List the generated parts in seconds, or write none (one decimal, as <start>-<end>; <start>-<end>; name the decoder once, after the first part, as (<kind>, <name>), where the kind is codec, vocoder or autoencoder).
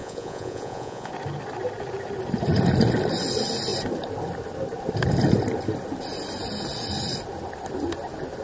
0.0-1.1 (vocoder, Vocos)